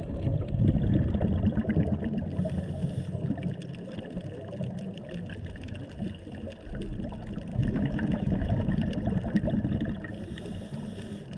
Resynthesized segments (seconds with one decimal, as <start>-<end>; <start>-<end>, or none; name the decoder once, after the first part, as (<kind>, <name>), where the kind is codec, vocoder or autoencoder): 7.5-8.5 (autoencoder, DAC-VAE)